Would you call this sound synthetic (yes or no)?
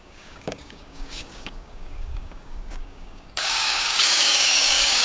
yes